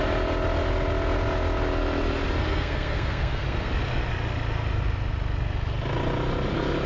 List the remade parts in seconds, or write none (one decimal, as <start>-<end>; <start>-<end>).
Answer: 2.4-3.7